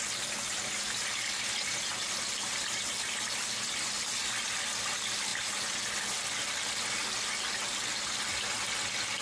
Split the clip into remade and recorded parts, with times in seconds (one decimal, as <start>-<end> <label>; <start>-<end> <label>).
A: 0.0-9.2 recorded